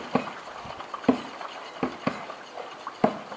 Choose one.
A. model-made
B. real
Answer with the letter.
B